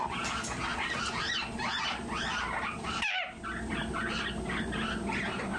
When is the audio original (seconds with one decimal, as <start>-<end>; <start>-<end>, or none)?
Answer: 0.0-5.6